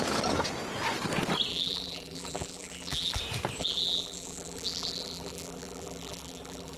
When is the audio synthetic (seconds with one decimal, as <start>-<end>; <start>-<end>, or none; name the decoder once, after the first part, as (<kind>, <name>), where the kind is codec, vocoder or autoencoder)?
1.5-3.2 (vocoder, BigVGAN v2); 3.6-6.8